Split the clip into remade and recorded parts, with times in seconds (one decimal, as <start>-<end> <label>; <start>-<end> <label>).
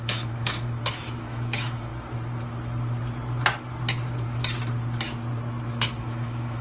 0.0-1.9 remade; 1.9-5.9 recorded; 5.9-6.6 remade